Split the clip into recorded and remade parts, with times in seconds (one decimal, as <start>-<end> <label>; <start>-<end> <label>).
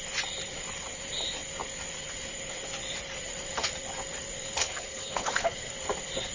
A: 0.0-4.6 recorded; 4.6-5.7 remade; 5.7-6.3 recorded